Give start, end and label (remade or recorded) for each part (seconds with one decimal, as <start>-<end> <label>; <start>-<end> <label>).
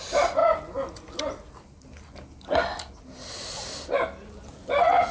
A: 0.0-5.1 recorded